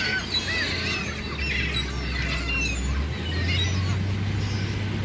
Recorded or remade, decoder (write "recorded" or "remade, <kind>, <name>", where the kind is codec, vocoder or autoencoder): recorded